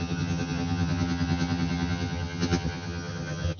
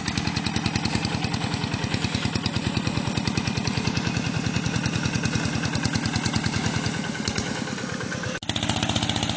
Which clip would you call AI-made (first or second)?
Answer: first